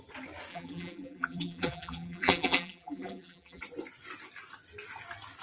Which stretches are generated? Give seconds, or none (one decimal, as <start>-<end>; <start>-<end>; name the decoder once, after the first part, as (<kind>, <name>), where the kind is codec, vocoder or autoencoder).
0.5-3.6 (vocoder, BigVGAN v2)